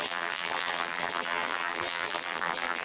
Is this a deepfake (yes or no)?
yes